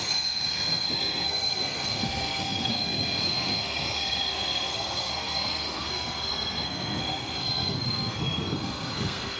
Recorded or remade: remade